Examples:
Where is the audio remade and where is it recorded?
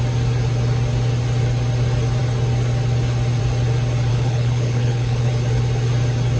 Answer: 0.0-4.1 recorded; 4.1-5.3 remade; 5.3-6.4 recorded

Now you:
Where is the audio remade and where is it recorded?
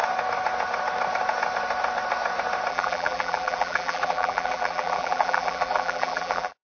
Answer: 0.0-2.7 recorded; 2.7-6.6 remade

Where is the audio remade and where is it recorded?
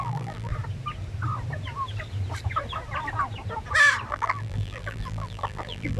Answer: 0.0-0.5 remade; 0.5-4.1 recorded; 4.1-6.0 remade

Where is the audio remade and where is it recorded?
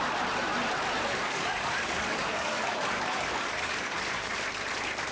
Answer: 0.0-1.2 recorded; 1.2-4.3 remade; 4.3-5.1 recorded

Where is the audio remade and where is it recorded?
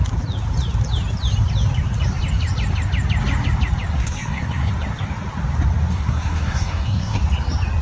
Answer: 0.0-3.9 recorded; 3.9-4.7 remade; 4.7-5.9 recorded; 5.9-7.2 remade; 7.2-7.8 recorded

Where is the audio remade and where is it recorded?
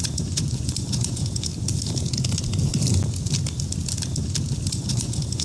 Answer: 0.0-1.5 remade; 1.5-4.7 recorded; 4.7-5.4 remade